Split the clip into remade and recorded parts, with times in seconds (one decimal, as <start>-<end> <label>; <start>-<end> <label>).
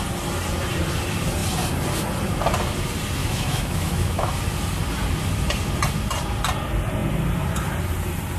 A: 0.0-3.2 recorded; 3.2-4.3 remade; 4.3-8.4 recorded